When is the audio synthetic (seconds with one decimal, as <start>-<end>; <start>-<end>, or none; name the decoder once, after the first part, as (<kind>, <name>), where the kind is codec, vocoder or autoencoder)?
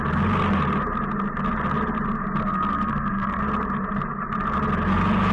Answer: 2.4-3.4 (codec, SNAC)